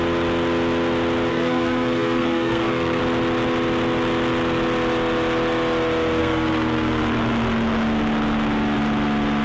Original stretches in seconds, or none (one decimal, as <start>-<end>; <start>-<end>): 0.0-1.3; 3.0-6.2; 7.0-9.4